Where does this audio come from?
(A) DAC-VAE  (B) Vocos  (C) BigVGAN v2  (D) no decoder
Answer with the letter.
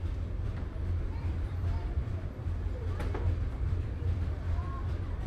C